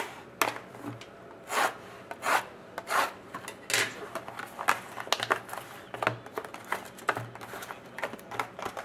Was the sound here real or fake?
real